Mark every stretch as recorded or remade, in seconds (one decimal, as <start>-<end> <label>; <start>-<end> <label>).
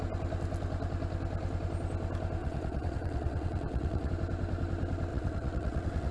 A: 0.0-2.4 recorded; 2.4-4.1 remade; 4.1-5.1 recorded; 5.1-6.1 remade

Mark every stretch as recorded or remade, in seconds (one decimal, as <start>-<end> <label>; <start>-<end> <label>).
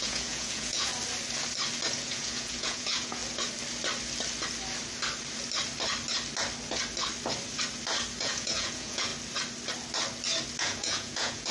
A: 0.0-0.9 remade; 0.9-1.9 recorded; 1.9-3.2 remade; 3.2-8.2 recorded; 8.2-9.1 remade; 9.1-10.6 recorded; 10.6-11.5 remade